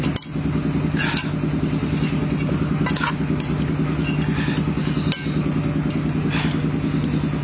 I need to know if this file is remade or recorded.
recorded